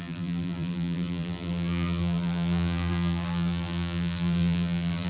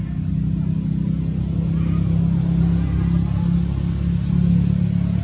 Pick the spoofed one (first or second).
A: first